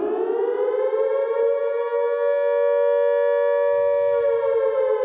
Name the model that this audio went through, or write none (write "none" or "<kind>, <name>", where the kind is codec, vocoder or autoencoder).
none